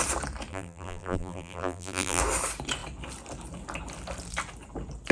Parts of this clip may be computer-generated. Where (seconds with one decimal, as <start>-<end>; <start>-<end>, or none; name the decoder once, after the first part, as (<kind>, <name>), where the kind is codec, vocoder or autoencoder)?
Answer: 0.5-2.2 (vocoder, BigVGAN v2)